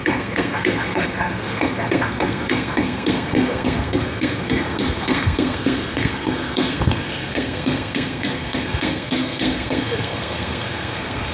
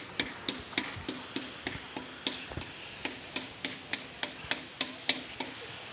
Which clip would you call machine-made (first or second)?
first